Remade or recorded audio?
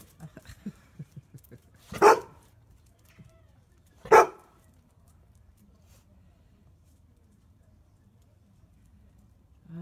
remade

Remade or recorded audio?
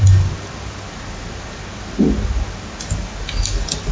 recorded